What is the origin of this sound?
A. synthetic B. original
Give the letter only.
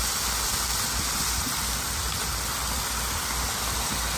B